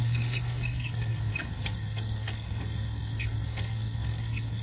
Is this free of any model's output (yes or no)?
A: no